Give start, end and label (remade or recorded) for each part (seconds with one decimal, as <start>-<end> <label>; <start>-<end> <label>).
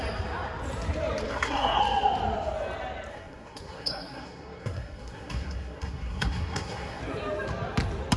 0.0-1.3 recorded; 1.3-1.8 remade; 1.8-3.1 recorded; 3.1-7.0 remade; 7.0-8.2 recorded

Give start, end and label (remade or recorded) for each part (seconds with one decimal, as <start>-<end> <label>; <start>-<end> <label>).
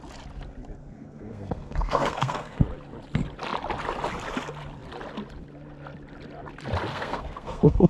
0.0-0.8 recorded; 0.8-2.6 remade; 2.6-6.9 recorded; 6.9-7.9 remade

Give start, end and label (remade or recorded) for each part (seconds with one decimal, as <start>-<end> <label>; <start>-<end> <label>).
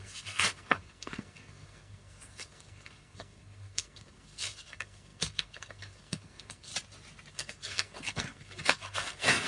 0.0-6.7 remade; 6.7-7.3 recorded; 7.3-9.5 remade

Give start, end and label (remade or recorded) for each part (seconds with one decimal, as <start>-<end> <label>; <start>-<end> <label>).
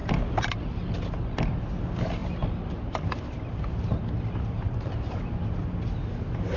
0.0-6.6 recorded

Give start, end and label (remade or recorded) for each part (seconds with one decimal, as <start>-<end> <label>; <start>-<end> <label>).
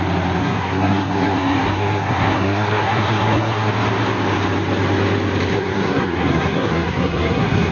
0.0-0.4 recorded; 0.4-3.7 remade; 3.7-5.5 recorded; 5.5-7.7 remade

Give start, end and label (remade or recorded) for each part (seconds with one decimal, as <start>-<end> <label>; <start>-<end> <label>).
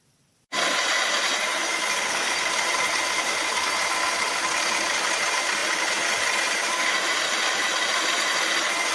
0.0-2.0 recorded; 2.0-2.5 remade; 2.5-8.9 recorded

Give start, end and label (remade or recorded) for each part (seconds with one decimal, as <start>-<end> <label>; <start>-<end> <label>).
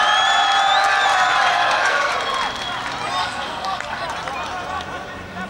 0.0-1.5 recorded; 1.5-2.1 remade; 2.1-3.2 recorded; 3.2-4.0 remade; 4.0-5.5 recorded